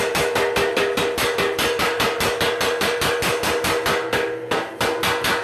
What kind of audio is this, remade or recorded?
recorded